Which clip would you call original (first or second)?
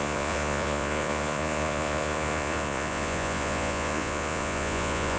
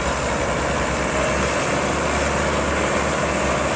second